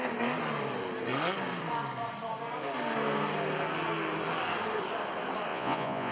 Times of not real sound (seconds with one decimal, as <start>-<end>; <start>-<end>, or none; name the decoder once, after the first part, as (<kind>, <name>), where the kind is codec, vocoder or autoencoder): 5.5-6.1 (vocoder, Vocos)